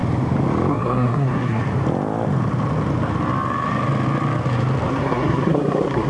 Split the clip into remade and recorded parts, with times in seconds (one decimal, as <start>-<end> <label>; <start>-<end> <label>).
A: 0.0-0.7 recorded; 0.7-1.6 remade; 1.6-4.9 recorded; 4.9-6.1 remade

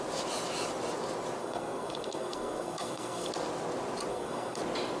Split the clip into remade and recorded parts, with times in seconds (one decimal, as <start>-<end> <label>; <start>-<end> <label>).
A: 0.0-1.4 recorded; 1.4-3.3 remade; 3.3-4.1 recorded; 4.1-4.6 remade; 4.6-5.0 recorded

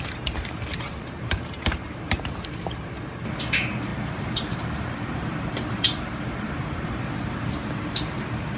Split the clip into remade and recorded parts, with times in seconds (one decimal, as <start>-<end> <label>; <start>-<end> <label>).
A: 0.0-8.6 remade

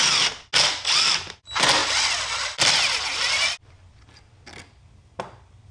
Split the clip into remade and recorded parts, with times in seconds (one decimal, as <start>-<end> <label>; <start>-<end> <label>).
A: 0.0-5.7 recorded

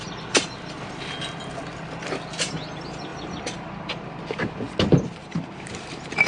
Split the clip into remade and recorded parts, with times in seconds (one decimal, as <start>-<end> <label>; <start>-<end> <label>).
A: 0.0-6.3 recorded

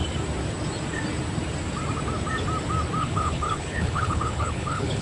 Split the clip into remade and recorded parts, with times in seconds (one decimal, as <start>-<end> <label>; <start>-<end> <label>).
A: 0.0-3.0 recorded; 3.0-5.0 remade